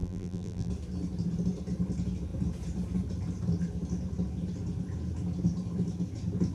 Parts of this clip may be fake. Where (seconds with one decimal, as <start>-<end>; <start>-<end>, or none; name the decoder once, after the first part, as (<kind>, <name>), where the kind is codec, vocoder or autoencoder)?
0.0-0.7 (vocoder, BigVGAN v2)